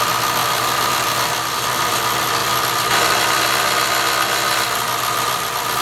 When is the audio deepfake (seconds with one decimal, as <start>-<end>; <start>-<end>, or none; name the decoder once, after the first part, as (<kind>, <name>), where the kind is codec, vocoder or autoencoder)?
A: 0.4-1.9 (vocoder, BigVGAN v2); 2.4-3.4

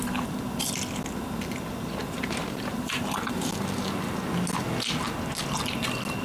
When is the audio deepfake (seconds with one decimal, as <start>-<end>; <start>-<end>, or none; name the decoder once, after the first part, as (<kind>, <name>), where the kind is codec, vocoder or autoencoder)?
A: 2.0-4.2 (vocoder, BigVGAN v2)

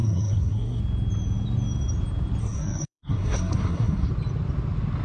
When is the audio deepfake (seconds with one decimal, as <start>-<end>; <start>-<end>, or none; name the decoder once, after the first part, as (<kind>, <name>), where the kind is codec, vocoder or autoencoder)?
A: 0.0-0.8 (codec, SNAC); 2.4-4.1

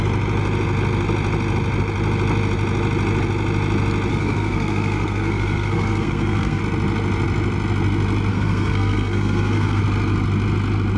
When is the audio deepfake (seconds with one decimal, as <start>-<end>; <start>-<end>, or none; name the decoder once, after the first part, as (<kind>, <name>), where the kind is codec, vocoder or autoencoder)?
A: 4.1-6.6 (codec, SNAC); 8.3-9.8

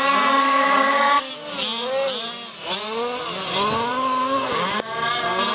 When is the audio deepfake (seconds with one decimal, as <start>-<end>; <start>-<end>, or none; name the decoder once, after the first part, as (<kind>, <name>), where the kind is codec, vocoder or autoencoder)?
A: 0.4-1.3 (codec, SNAC)

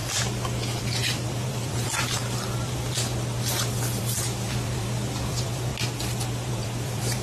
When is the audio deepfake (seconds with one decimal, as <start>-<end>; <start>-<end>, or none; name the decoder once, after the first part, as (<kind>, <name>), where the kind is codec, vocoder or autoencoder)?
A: 0.8-2.0 (vocoder, BigVGAN v2); 2.5-5.7; 6.4-7.2